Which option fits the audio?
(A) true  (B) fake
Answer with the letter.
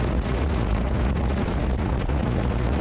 B